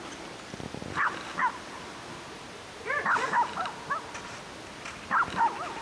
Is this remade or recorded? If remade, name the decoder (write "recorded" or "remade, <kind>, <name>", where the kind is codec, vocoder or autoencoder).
recorded